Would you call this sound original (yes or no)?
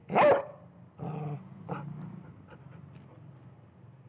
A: yes